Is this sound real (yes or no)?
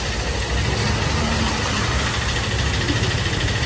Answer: yes